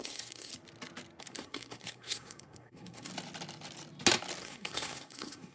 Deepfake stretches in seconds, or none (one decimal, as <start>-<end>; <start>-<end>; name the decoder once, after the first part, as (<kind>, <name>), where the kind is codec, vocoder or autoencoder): 0.0-0.5 (codec, SNAC); 1.2-3.1; 4.4-5.5